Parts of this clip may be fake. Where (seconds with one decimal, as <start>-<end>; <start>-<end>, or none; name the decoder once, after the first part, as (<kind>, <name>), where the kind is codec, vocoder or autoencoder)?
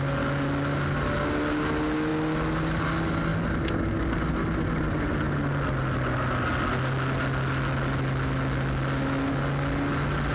none